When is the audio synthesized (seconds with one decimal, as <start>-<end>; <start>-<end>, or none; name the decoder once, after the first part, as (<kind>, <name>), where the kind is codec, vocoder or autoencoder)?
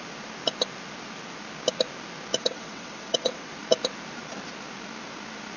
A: 2.4-3.5 (vocoder, WaveNeXt)